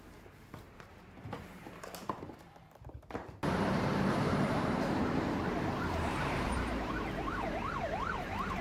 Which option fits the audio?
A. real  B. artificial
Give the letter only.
B